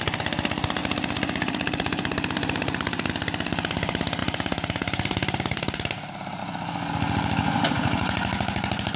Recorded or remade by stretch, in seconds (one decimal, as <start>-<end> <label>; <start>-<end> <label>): 0.0-0.8 recorded; 0.8-3.1 remade; 3.1-4.2 recorded; 4.2-6.4 remade; 6.4-9.0 recorded